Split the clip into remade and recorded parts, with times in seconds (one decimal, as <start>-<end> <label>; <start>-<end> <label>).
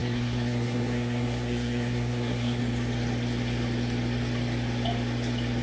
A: 0.0-2.6 remade; 2.6-5.6 recorded